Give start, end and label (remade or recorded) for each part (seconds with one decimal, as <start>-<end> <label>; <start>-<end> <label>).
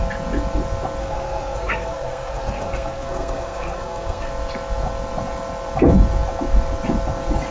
0.0-1.0 recorded; 1.0-4.3 remade; 4.3-7.5 recorded